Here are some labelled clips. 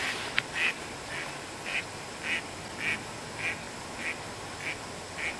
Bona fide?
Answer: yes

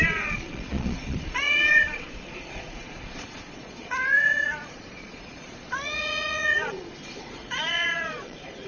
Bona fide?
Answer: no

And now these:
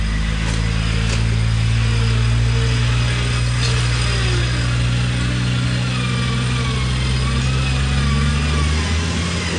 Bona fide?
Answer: yes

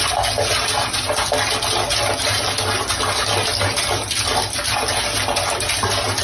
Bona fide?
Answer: yes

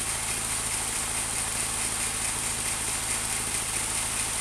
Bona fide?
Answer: yes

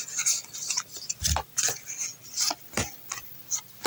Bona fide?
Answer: yes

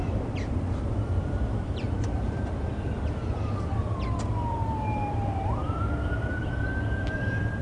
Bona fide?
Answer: no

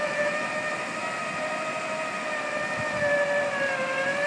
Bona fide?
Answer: yes